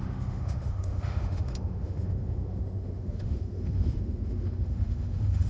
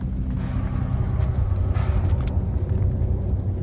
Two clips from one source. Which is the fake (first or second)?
first